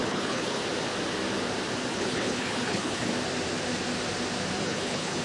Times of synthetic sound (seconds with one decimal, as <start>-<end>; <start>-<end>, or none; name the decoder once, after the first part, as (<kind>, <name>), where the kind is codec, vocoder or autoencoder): 0.0-0.6 (codec, HILCodec); 1.9-3.1; 4.6-5.2